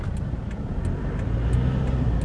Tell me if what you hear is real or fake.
real